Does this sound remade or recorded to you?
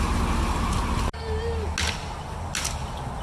recorded